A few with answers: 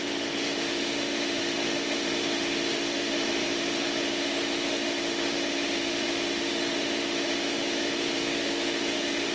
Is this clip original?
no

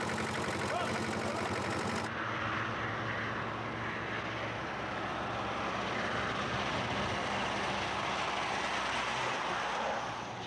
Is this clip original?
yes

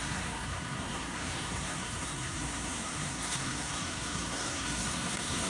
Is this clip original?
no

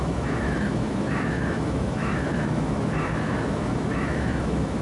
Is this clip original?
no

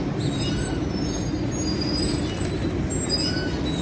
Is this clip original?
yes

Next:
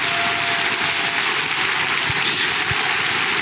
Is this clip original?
yes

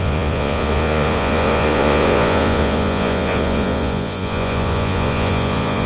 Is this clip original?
no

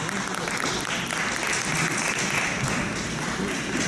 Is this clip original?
yes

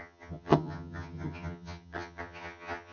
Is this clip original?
no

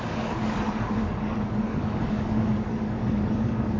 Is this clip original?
no